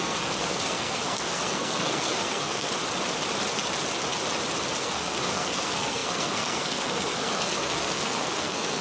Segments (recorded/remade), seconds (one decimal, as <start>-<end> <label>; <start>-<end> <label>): 0.0-2.8 remade; 2.8-4.8 recorded; 4.8-8.8 remade